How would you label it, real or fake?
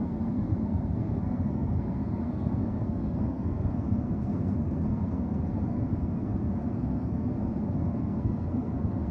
fake